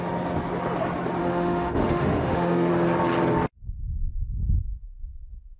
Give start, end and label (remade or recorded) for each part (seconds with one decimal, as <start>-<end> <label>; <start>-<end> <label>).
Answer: 0.0-1.2 recorded; 1.2-2.7 remade; 2.7-5.6 recorded